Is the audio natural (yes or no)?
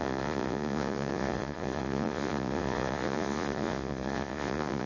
no